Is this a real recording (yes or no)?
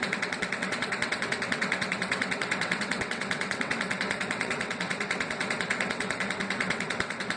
no